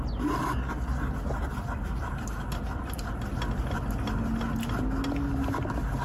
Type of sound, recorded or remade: recorded